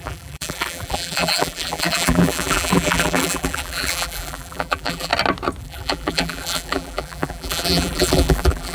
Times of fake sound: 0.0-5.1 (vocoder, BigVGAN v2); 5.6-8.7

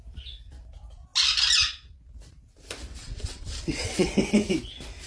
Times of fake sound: 3.0-4.1 (vocoder, WaveNeXt)

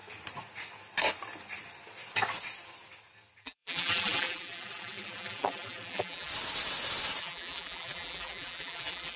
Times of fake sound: 3.4-6.3 (vocoder, BigVGAN v2); 7.2-9.2

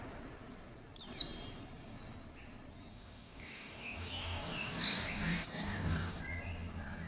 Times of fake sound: 2.9-6.2 (codec, DAC)